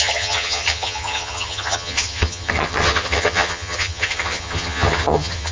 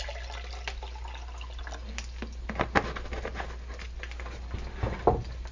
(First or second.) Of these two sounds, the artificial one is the first